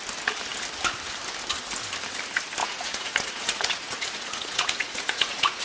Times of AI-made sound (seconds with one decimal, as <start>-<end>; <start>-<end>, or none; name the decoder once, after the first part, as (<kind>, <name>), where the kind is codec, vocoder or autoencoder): 2.6-5.6 (vocoder, Vocos)